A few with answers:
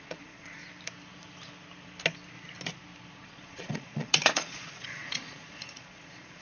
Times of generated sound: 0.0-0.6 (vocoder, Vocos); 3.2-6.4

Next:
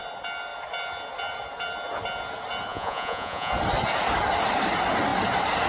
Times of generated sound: 2.7-3.5 (vocoder, Vocos)

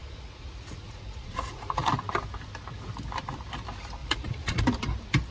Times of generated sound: 0.0-1.9 (vocoder, Vocos); 4.0-4.6

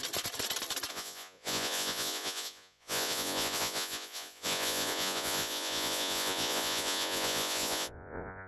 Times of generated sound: 0.9-8.5 (vocoder, Vocos)

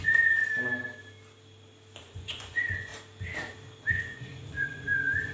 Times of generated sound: 0.0-0.4 (vocoder, Vocos); 2.0-2.9; 3.8-5.3

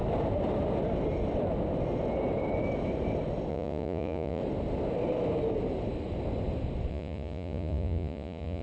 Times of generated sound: 3.5-4.4 (vocoder, Vocos); 6.9-8.6